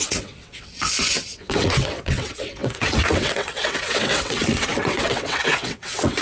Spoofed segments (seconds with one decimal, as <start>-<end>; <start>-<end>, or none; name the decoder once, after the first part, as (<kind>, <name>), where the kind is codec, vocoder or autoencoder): 0.0-6.2 (vocoder, WaveNeXt)